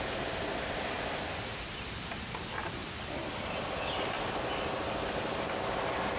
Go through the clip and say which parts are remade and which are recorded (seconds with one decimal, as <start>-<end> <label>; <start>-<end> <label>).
0.0-6.2 recorded